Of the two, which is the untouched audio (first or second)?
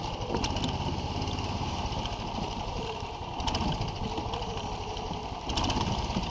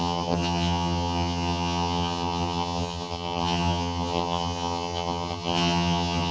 first